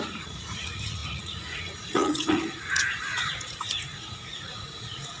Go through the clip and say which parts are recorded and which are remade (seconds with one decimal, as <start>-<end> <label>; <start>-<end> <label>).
0.0-5.2 remade